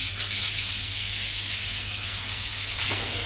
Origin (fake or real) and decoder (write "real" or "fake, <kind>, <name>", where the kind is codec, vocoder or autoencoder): fake, codec, SNAC